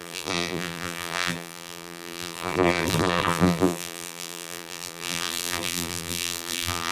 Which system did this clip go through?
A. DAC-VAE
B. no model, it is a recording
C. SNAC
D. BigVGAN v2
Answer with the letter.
D